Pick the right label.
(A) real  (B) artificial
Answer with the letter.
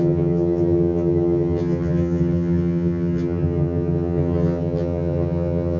B